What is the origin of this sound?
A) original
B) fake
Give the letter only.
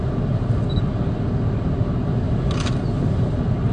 A